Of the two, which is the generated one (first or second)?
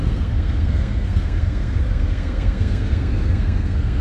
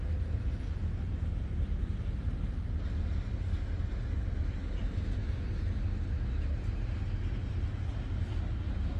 first